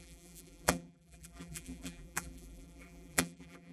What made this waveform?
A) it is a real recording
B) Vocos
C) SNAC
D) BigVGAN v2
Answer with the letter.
D